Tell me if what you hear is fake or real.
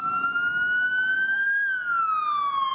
real